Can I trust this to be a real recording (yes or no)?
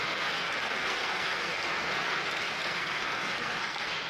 no